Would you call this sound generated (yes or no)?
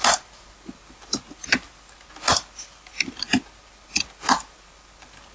no